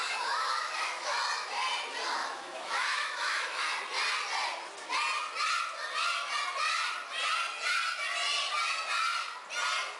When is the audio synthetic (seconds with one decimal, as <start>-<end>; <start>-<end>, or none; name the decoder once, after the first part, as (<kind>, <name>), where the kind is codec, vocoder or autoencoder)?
0.0-1.2 (autoencoder, DAC-VAE); 2.2-3.7